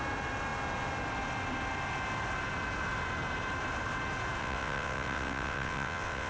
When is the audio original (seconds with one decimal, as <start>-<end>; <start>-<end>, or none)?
0.0-4.4